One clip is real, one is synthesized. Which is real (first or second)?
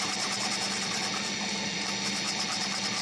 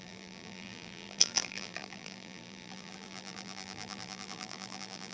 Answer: first